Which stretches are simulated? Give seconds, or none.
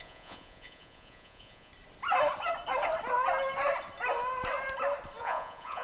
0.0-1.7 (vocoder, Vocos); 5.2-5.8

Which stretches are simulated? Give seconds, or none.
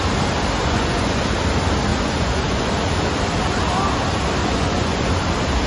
0.6-1.2 (vocoder, Vocos); 1.9-2.7; 4.4-5.1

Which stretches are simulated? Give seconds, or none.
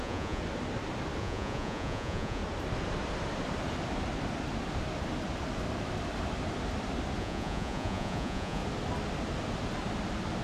0.0-0.4 (vocoder, Vocos); 1.2-2.4; 7.2-8.6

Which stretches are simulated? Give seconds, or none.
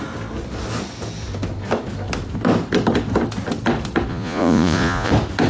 4.1-5.1 (vocoder, Vocos)